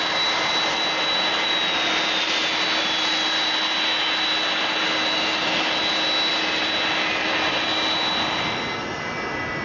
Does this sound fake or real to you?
real